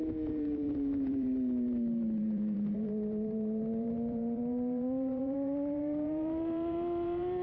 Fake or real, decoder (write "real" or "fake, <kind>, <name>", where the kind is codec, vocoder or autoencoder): fake, vocoder, BigVGAN v2